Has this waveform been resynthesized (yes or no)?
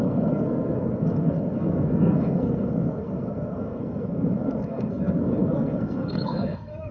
yes